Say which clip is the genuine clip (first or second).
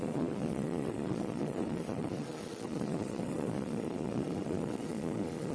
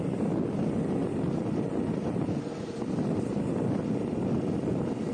second